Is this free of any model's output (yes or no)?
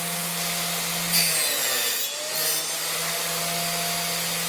yes